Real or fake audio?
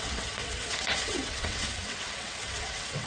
fake